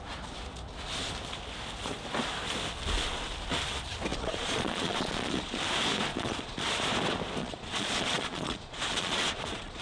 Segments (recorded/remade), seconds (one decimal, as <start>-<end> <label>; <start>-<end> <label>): 0.0-4.1 recorded; 4.1-5.6 remade; 5.6-6.1 recorded; 6.1-6.6 remade; 6.6-7.4 recorded; 7.4-9.8 remade

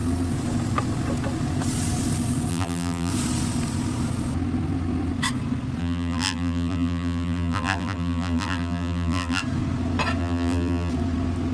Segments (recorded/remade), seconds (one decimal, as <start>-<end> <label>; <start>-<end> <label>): 0.0-2.5 recorded; 2.5-3.1 remade; 3.1-5.8 recorded; 5.8-9.4 remade; 9.4-10.2 recorded; 10.2-10.9 remade; 10.9-11.5 recorded

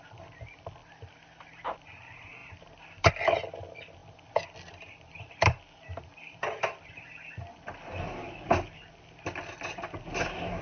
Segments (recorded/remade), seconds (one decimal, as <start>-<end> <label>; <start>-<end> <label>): 0.0-0.8 recorded; 0.8-1.6 remade; 1.6-2.4 recorded; 2.4-3.1 remade; 3.1-10.6 recorded